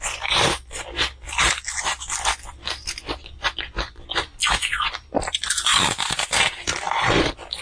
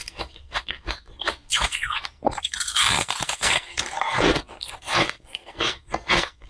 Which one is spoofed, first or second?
second